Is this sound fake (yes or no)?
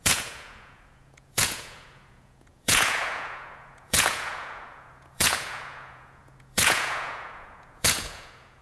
yes